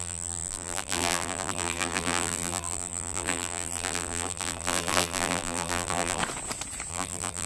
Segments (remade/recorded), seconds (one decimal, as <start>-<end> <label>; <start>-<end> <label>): 0.0-6.2 remade; 6.2-6.9 recorded; 6.9-7.5 remade

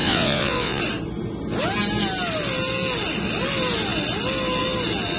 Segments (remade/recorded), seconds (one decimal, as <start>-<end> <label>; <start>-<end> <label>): 0.0-0.8 remade; 0.8-5.2 recorded

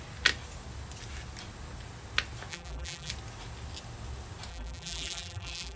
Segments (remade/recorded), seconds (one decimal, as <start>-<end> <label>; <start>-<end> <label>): 0.0-2.5 recorded; 2.5-3.1 remade; 3.1-4.5 recorded; 4.5-5.8 remade

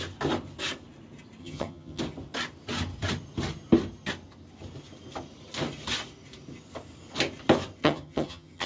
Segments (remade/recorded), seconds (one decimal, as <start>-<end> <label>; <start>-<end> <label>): 0.0-1.4 recorded; 1.4-2.0 remade; 2.0-7.8 recorded; 7.8-8.7 remade

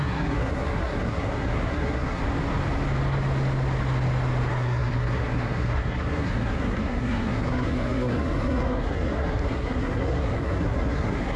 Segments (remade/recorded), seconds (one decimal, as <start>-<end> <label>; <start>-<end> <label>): 0.0-2.2 remade; 2.2-4.5 recorded; 4.5-11.4 remade

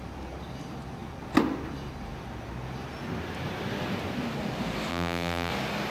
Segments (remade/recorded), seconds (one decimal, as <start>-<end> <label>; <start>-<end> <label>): 0.0-4.9 recorded; 4.9-5.5 remade; 5.5-5.9 recorded